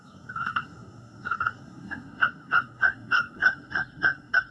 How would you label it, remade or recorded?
remade